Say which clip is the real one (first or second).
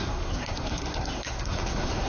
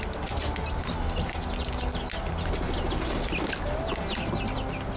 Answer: second